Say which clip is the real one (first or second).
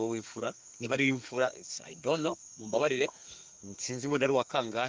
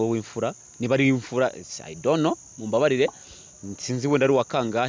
second